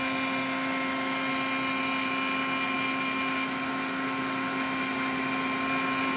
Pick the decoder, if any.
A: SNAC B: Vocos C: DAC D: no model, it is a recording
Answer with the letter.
D